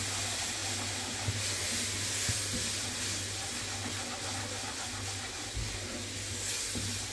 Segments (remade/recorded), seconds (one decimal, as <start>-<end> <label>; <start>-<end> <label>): 0.0-7.1 recorded